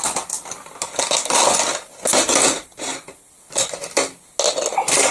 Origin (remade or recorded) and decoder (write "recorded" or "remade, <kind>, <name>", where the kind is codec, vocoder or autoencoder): recorded